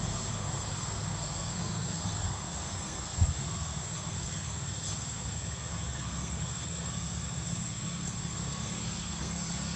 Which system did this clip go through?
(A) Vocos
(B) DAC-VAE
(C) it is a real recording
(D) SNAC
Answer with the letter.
D